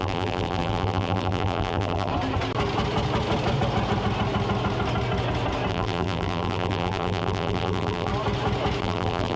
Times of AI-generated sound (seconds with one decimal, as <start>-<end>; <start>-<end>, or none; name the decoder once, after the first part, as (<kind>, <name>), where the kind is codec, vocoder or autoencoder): 0.0-2.1 (vocoder, BigVGAN v2); 5.7-8.1; 8.8-9.4